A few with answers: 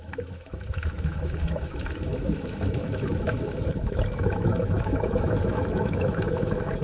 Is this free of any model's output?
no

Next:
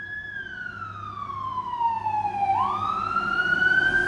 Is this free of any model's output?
yes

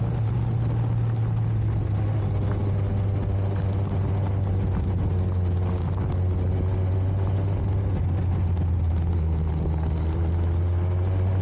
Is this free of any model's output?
yes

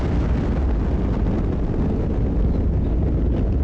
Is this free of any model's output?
yes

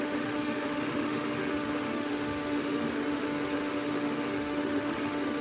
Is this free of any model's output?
no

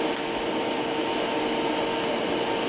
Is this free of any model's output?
yes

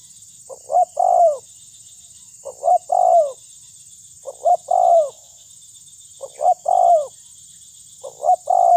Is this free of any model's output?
yes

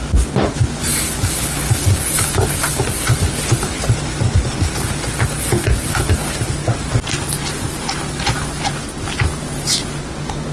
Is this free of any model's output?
yes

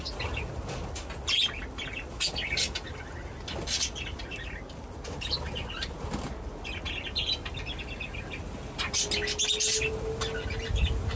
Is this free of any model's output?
yes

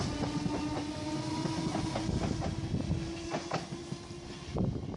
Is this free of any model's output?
yes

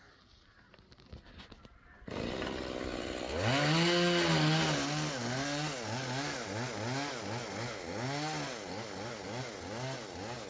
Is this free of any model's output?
yes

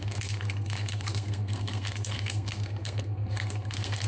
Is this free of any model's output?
no